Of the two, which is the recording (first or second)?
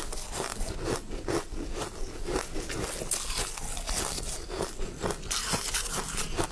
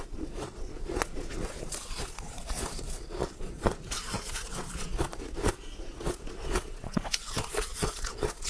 first